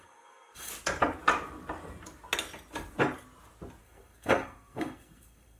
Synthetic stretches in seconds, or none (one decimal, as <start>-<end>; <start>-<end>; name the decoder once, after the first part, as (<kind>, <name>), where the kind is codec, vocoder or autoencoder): 0.0-0.7 (codec, SNAC); 3.8-5.6